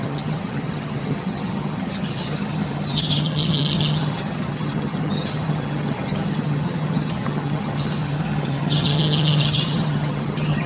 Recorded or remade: remade